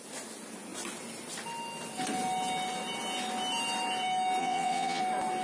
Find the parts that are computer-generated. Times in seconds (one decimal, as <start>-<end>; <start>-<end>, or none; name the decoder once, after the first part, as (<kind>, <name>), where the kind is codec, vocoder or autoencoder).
4.4-5.0 (vocoder, WaveNeXt)